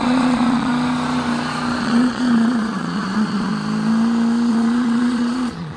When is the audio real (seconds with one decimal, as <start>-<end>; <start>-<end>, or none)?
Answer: 0.7-1.8; 3.5-4.5